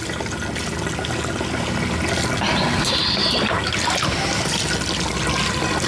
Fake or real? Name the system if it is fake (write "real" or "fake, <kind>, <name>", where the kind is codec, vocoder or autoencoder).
real